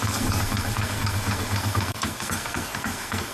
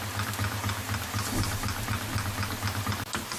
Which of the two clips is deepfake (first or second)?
first